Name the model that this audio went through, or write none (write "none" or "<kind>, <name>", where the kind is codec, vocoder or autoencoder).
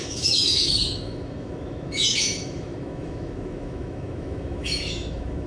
autoencoder, DAC-VAE